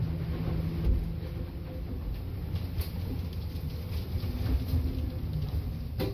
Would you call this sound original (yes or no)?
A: yes